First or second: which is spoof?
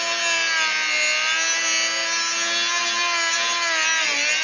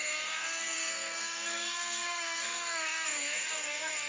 second